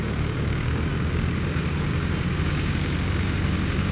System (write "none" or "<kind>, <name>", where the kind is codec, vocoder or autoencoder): codec, DAC